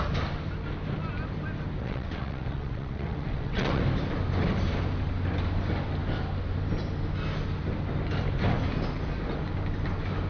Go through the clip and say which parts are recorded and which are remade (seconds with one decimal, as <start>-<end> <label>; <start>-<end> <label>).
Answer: 0.0-1.8 recorded; 1.8-3.8 remade; 3.8-10.3 recorded